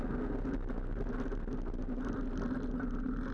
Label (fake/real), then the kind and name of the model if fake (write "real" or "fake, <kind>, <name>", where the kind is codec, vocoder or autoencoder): real